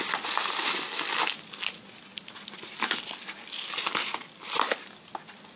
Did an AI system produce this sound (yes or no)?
no